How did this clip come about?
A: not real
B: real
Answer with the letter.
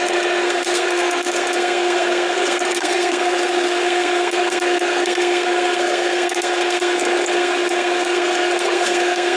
A